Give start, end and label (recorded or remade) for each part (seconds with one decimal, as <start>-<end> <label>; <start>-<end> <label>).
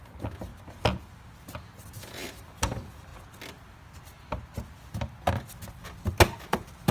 0.0-0.5 remade; 0.5-1.9 recorded; 1.9-3.1 remade; 3.1-5.7 recorded; 5.7-6.9 remade